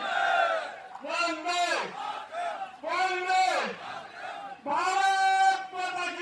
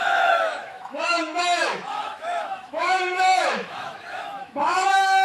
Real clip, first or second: first